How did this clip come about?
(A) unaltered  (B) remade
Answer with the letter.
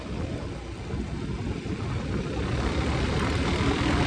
A